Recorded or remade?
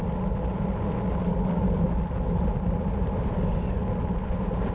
recorded